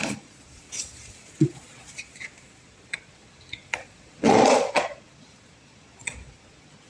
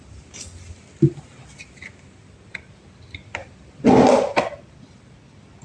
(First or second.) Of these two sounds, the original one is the second